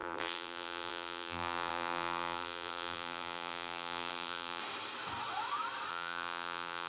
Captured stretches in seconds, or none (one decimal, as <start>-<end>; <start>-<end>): 4.6-5.9